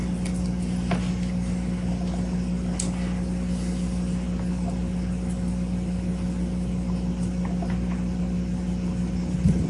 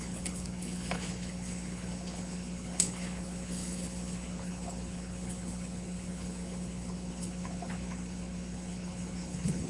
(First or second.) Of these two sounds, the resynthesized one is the second